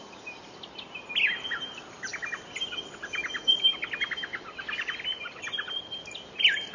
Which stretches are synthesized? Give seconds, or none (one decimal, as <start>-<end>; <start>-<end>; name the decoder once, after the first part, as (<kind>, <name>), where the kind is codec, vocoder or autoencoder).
none